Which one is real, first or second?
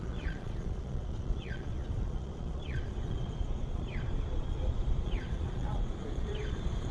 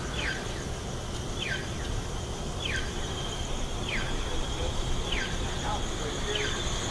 second